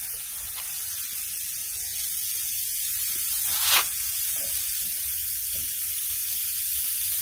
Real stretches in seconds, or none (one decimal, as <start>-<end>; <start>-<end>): 0.0-1.6; 4.4-7.2